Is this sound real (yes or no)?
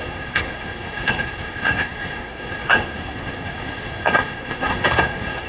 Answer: no